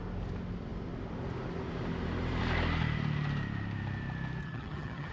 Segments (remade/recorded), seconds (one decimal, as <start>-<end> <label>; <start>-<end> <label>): 0.0-4.4 recorded; 4.4-5.1 remade